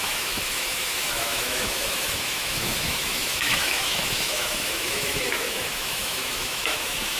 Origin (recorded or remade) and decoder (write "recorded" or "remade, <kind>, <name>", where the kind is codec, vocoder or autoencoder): remade, autoencoder, DAC-VAE